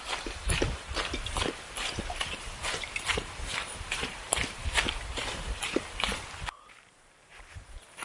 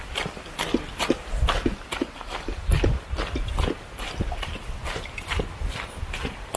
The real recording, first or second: second